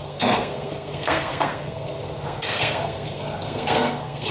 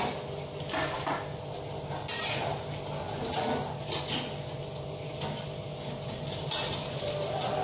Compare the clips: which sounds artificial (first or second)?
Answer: first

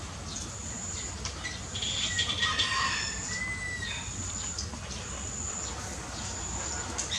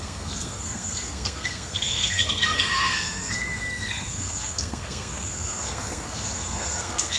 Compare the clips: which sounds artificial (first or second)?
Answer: second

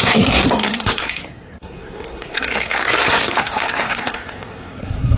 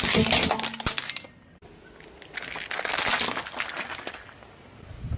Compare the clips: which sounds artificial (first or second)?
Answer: first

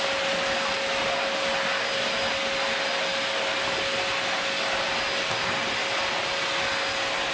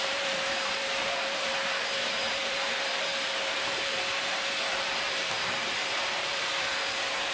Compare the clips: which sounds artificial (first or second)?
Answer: second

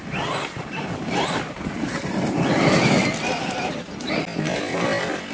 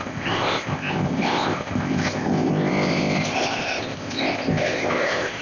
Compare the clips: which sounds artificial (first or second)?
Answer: second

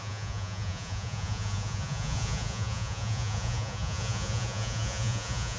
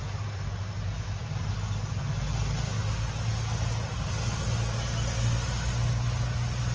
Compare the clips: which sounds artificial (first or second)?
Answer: first